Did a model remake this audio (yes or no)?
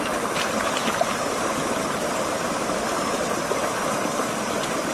yes